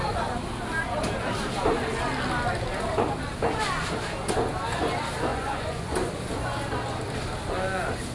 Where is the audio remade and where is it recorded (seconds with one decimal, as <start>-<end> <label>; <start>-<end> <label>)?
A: 0.0-5.3 recorded; 5.3-6.1 remade; 6.1-8.1 recorded